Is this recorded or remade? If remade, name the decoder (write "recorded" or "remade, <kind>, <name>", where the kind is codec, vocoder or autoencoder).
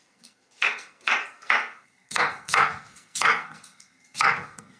remade, codec, SNAC